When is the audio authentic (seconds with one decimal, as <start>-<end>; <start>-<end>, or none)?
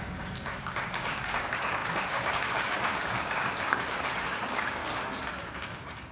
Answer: 4.8-5.4